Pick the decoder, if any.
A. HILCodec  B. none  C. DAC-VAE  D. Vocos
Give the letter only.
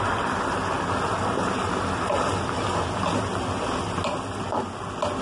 B